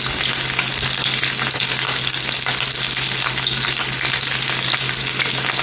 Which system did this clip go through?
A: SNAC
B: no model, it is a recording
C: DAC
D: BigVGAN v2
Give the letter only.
B